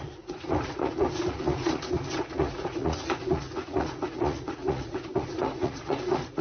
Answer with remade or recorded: remade